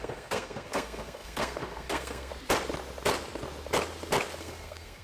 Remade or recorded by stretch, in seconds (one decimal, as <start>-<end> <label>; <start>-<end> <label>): 0.0-2.3 remade; 2.3-4.4 recorded; 4.4-5.0 remade

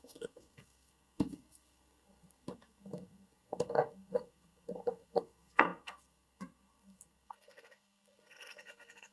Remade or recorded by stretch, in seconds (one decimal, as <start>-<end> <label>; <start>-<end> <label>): 0.0-9.1 remade

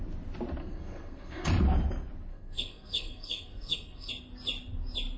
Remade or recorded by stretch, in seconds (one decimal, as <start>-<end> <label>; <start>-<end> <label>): 0.0-0.6 recorded; 0.6-1.5 remade; 1.5-2.3 recorded; 2.3-4.1 remade; 4.1-5.2 recorded

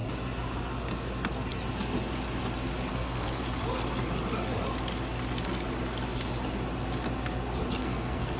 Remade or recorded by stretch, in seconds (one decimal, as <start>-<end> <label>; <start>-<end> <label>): 0.0-2.9 recorded; 2.9-3.4 remade; 3.4-7.8 recorded; 7.8-8.4 remade

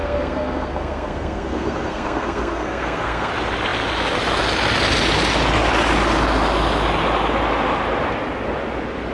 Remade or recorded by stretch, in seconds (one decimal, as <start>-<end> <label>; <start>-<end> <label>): 0.0-3.3 remade; 3.3-9.1 recorded

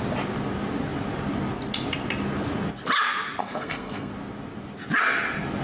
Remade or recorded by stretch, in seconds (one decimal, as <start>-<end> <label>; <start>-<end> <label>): 0.0-3.4 recorded; 3.4-4.1 remade; 4.1-5.6 recorded